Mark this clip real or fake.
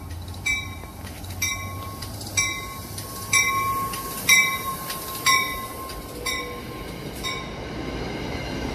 real